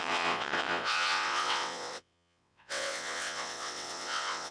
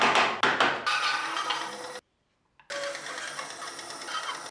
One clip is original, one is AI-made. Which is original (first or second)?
second